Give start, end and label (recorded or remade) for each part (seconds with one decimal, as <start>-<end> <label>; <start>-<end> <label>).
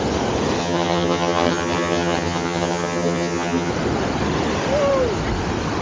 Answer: 0.0-0.6 recorded; 0.6-3.7 remade; 3.7-5.8 recorded